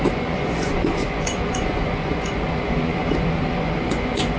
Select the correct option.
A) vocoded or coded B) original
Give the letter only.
A